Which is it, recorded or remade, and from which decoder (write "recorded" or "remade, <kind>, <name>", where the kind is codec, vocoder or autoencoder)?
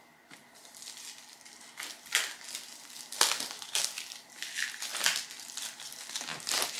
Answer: recorded